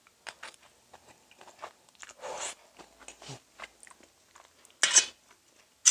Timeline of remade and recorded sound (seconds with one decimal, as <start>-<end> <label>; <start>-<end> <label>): 0.0-5.9 recorded